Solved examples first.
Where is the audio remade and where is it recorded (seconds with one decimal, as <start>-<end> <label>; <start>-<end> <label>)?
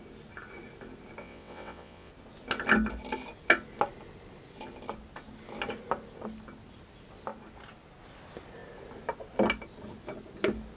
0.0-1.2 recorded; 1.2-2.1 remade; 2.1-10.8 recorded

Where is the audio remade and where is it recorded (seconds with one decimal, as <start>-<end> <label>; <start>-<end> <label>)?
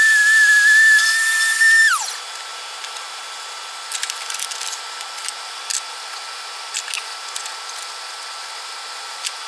0.0-9.5 recorded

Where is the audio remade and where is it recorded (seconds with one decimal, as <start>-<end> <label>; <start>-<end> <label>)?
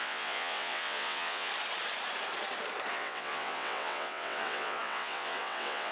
0.0-1.5 remade; 1.5-2.9 recorded; 2.9-5.9 remade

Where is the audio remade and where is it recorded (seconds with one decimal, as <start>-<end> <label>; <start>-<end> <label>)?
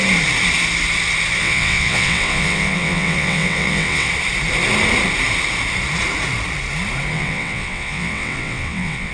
0.0-1.4 recorded; 1.4-4.1 remade; 4.1-7.1 recorded; 7.1-9.1 remade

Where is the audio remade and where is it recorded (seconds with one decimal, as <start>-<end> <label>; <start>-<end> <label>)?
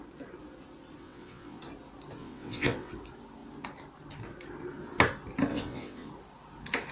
0.0-1.0 recorded; 1.0-1.6 remade; 1.6-2.2 recorded; 2.2-2.9 remade; 2.9-5.5 recorded; 5.5-6.1 remade; 6.1-6.9 recorded